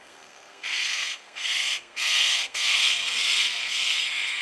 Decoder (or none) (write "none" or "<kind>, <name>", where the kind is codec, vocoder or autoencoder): codec, SNAC